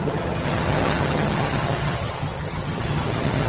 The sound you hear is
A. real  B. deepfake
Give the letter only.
B